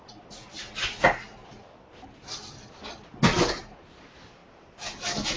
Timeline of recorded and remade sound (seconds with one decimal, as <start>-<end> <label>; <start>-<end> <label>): 0.0-5.4 recorded

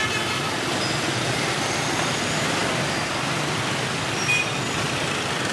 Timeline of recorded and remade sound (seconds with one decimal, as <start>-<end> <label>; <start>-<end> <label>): 0.0-2.6 remade; 2.6-4.4 recorded; 4.4-5.5 remade

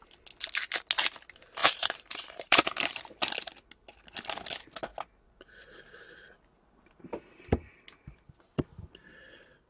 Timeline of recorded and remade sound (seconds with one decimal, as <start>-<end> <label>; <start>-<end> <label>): 0.0-1.6 recorded; 1.6-3.2 remade; 3.2-9.7 recorded

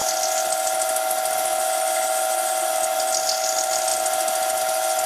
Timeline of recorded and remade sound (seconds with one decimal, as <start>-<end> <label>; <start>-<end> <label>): 0.0-5.1 recorded

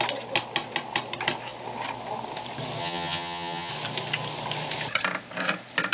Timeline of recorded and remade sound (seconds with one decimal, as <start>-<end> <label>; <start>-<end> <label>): 0.0-2.8 recorded; 2.8-3.7 remade; 3.7-5.9 recorded

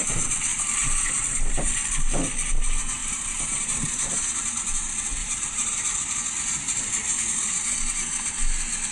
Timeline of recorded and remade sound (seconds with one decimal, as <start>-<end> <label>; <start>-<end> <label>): 0.0-0.5 recorded; 0.5-1.7 remade; 1.7-3.0 recorded; 3.0-4.5 remade; 4.5-5.2 recorded; 5.2-6.2 remade; 6.2-8.9 recorded